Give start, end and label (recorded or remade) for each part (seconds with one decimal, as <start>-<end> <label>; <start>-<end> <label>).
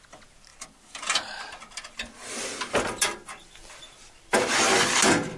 0.0-5.4 recorded